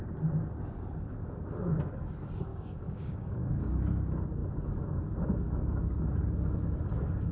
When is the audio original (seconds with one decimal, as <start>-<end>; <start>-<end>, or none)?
0.0-2.5; 3.8-7.3